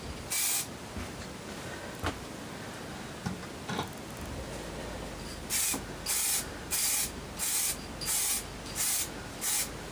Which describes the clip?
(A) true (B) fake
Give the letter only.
A